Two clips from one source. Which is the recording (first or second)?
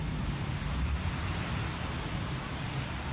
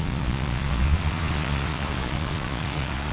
first